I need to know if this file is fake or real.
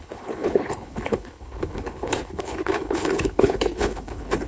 fake